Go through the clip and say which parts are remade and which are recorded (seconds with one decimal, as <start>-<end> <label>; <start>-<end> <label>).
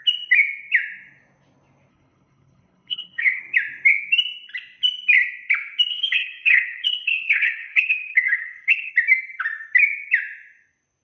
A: 0.0-1.9 recorded; 1.9-3.4 remade; 3.4-5.9 recorded; 5.9-8.9 remade; 8.9-11.0 recorded